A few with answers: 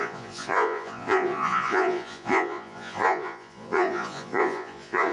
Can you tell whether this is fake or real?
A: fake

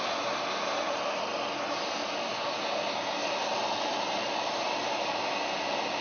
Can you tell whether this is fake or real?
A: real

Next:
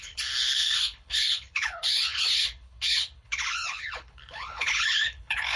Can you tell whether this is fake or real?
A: fake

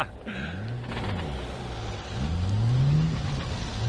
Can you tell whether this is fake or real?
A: real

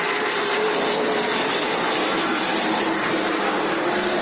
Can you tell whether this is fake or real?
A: fake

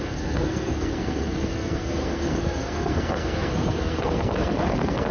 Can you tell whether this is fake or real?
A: fake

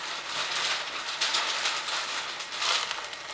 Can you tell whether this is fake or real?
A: real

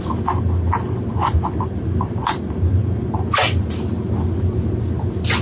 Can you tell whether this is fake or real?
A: real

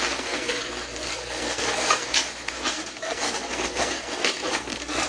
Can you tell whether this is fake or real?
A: fake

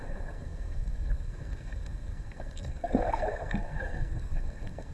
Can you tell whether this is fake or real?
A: fake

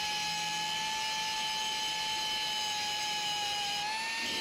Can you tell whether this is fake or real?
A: real